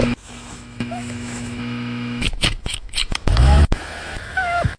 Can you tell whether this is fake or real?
fake